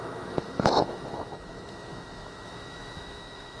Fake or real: fake